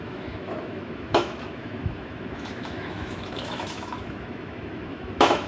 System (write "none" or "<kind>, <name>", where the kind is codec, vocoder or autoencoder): autoencoder, DAC-VAE